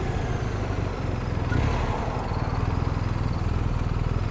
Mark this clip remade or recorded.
recorded